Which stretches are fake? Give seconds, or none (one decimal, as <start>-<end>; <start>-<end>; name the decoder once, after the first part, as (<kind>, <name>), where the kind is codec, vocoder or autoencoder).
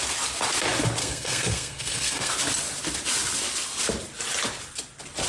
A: 1.0-2.3 (codec, SNAC)